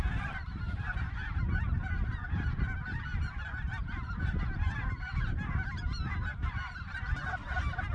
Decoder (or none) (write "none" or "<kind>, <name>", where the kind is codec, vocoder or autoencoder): vocoder, BigVGAN v2